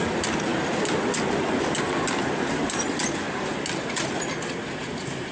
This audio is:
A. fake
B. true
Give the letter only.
B